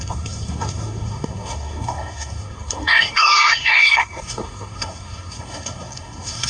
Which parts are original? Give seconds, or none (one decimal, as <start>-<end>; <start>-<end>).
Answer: none